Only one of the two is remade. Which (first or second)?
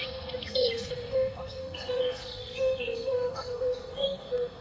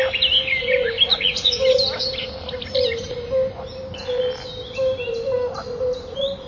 first